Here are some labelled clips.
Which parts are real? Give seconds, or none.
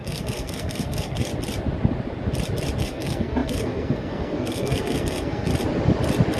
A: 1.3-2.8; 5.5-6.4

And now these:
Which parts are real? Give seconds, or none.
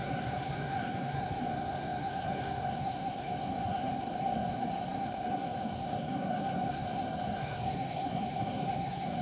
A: none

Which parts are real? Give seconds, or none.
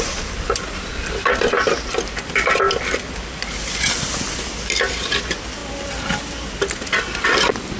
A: 0.0-7.8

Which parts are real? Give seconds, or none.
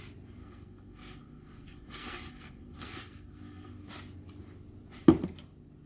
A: 0.0-0.4; 3.9-5.9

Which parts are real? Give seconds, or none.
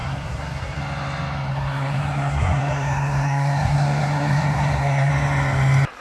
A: 0.8-1.5; 5.1-6.0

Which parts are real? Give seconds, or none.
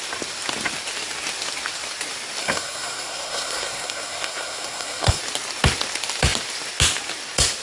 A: 0.0-2.4; 5.2-7.6